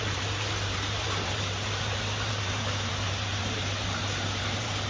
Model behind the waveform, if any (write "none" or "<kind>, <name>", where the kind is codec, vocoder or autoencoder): vocoder, BigVGAN v2